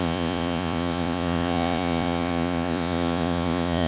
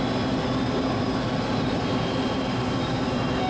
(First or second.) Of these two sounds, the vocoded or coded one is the first